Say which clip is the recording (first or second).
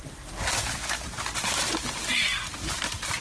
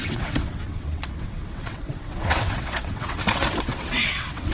first